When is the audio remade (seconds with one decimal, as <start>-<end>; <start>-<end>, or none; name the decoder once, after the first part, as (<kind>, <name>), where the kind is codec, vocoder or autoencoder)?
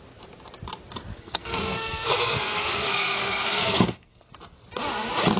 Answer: 1.1-4.3 (codec, SNAC)